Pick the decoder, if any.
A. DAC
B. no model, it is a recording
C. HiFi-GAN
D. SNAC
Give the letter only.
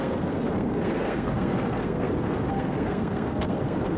D